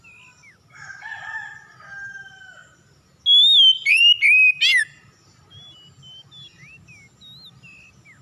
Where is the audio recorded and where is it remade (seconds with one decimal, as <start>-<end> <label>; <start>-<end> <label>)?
0.0-8.2 recorded